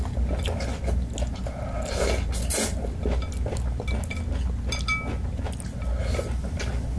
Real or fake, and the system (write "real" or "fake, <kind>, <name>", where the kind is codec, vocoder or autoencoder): real